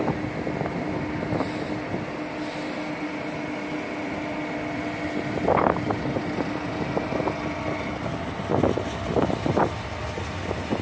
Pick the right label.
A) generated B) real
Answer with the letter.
B